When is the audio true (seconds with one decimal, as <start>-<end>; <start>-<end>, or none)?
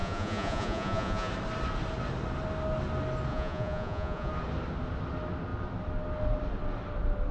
1.3-3.3; 4.3-7.3